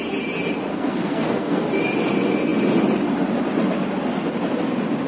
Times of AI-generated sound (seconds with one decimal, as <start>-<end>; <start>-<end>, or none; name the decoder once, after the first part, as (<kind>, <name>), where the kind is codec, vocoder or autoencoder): 0.7-1.6 (codec, SNAC)